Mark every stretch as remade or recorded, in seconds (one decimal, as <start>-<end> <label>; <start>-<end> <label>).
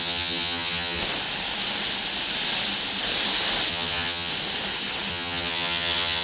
0.0-1.0 remade; 1.0-3.7 recorded; 3.7-4.3 remade; 4.3-5.1 recorded; 5.1-6.2 remade